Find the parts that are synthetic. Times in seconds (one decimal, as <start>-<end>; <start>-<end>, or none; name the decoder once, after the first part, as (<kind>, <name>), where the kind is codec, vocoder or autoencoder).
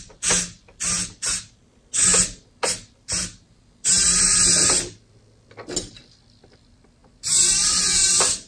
none